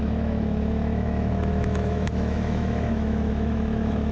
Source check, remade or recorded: remade